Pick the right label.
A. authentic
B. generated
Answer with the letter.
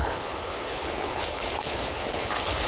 B